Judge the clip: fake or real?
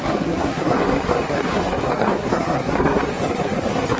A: fake